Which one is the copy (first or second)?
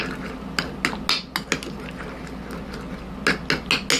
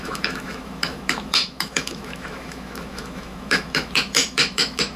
second